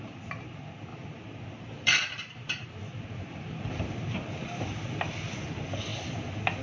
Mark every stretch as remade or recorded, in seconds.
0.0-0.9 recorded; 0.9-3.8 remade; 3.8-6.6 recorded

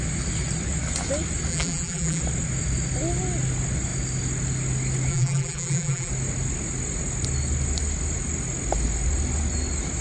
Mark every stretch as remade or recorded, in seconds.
0.0-1.5 recorded; 1.5-2.2 remade; 2.2-5.1 recorded; 5.1-6.1 remade; 6.1-10.0 recorded